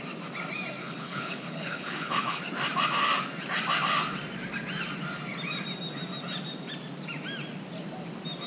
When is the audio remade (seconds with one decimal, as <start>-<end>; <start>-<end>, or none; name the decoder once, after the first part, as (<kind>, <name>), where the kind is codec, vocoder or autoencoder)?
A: 0.8-2.4 (codec, HILCodec)

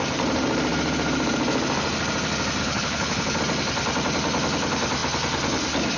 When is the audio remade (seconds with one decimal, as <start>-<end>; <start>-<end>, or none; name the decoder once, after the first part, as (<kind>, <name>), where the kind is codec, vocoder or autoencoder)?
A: 2.6-3.4 (codec, HILCodec)

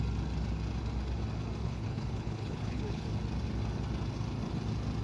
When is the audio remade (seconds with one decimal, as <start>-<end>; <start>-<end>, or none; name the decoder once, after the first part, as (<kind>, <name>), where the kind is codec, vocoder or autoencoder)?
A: 1.6-3.1 (codec, HILCodec)

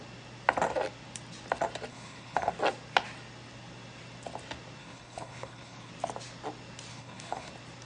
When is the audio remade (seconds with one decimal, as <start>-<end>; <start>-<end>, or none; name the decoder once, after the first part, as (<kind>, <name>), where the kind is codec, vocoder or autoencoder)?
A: 1.9-2.5 (codec, HILCodec); 4.8-5.9; 6.9-7.5

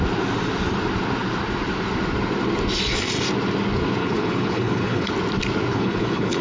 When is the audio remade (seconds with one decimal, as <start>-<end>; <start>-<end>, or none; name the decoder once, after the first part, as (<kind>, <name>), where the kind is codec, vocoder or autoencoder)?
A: 4.0-5.1 (codec, HILCodec); 5.7-6.4

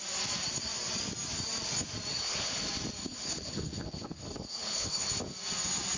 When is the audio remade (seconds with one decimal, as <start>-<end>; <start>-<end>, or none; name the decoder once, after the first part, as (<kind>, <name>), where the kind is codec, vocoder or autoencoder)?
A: 2.1-2.6 (codec, HILCodec); 3.0-5.1

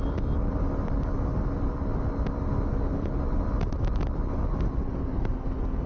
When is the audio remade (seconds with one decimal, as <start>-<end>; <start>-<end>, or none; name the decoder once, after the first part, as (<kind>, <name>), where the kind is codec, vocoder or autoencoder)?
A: 2.7-3.2 (codec, HILCodec)

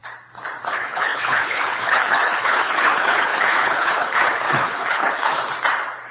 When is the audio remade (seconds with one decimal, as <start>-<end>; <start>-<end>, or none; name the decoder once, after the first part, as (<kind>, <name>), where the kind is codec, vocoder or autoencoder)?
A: 0.7-5.4 (codec, HILCodec)